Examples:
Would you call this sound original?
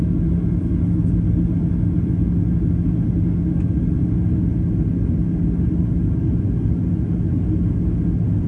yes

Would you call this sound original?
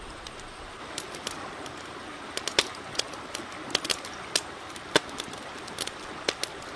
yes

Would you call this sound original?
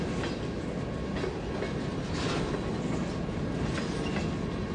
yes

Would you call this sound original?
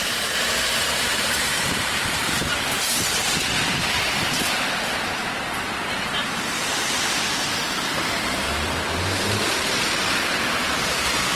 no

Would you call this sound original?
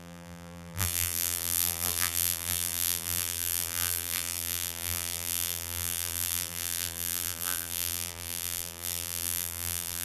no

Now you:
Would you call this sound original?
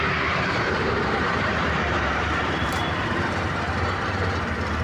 no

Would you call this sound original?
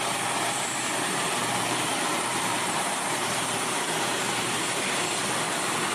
no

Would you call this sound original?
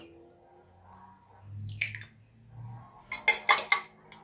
yes